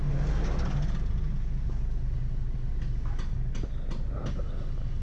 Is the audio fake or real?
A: real